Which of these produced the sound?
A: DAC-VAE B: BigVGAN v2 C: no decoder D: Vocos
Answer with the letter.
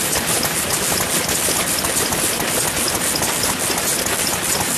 C